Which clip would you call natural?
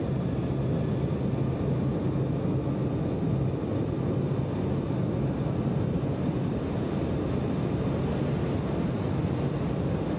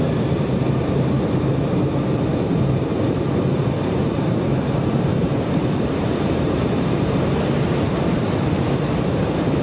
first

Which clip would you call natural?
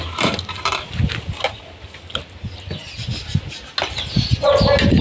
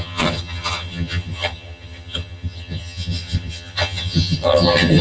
first